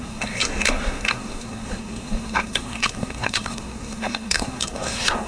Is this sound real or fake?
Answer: fake